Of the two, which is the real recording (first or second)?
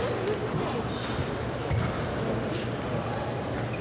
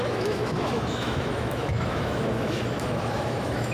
first